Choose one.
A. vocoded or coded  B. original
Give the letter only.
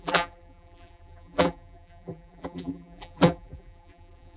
A